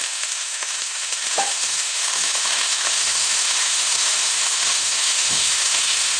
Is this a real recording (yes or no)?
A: no